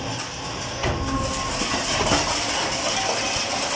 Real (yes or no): yes